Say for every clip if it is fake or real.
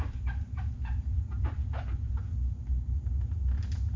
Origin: real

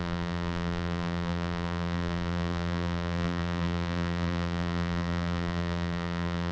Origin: fake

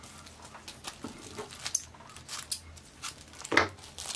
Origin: real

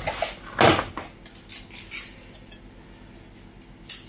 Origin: real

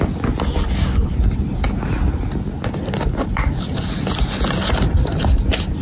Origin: real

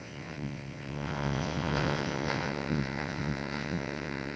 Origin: fake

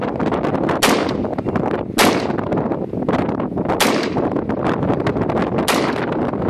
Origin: real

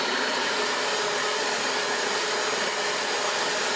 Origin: real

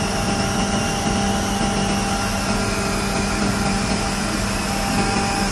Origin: real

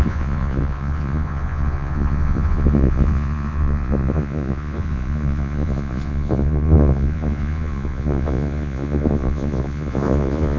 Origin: fake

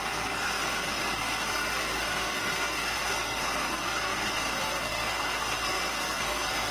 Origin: fake